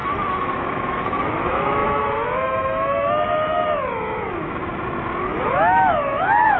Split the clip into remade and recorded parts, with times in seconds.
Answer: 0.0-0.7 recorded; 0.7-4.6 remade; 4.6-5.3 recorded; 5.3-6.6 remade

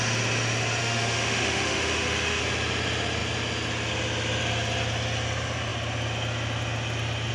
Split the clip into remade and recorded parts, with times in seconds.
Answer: 0.0-0.8 recorded; 0.8-2.4 remade; 2.4-7.3 recorded

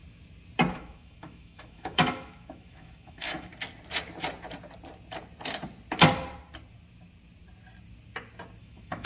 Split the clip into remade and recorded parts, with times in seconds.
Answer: 0.0-0.7 recorded; 0.7-3.5 remade; 3.5-8.6 recorded; 8.6-9.1 remade

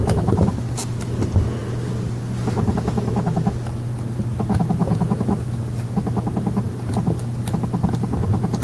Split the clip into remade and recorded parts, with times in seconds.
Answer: 0.0-0.5 remade; 0.5-4.8 recorded; 4.8-5.6 remade; 5.6-8.6 recorded

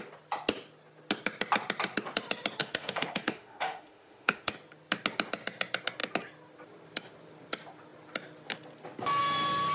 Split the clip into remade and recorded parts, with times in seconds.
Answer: 0.0-2.6 recorded; 2.6-4.5 remade; 4.5-9.7 recorded

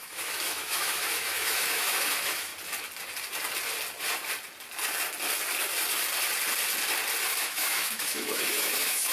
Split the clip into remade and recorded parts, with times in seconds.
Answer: 0.0-2.5 remade; 2.5-7.4 recorded; 7.4-9.1 remade